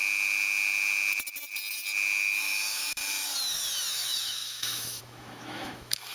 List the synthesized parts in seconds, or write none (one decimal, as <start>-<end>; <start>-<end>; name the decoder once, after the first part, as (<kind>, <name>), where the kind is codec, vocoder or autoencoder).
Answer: 2.4-3.0 (autoencoder, DAC-VAE); 3.9-6.1

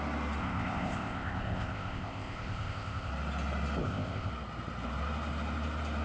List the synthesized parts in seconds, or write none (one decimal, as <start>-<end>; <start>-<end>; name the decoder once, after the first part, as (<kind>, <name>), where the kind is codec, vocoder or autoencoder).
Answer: 0.4-3.1 (codec, ZipCodec); 3.8-4.3

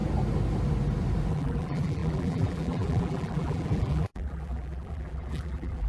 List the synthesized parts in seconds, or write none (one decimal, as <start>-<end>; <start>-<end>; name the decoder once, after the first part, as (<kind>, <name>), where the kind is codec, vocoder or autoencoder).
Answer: 1.3-5.9 (vocoder, BigVGAN v2)

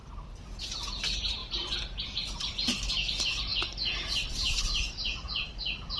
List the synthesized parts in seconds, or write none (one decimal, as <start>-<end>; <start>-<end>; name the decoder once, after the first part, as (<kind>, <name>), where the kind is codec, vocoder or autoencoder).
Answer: none

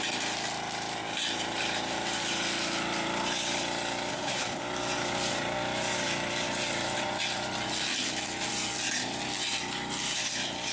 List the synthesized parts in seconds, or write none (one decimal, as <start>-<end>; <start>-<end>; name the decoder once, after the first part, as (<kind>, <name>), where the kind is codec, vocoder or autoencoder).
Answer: 4.1-4.6 (codec, HILCodec)

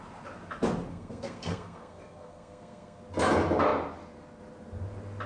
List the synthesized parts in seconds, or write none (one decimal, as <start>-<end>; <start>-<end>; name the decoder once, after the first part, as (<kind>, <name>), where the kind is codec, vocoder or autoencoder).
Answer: 0.9-3.0 (codec, SNAC)